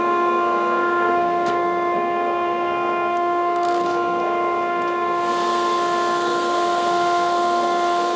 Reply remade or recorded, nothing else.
remade